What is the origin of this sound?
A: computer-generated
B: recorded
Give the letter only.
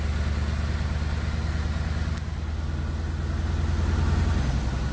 B